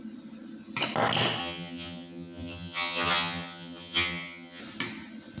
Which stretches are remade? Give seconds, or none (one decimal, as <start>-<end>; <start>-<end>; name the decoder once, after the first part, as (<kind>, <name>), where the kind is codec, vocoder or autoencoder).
1.4-4.6 (vocoder, HiFi-GAN)